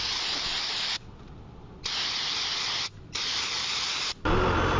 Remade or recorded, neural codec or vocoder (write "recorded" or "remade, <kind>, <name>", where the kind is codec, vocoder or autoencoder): recorded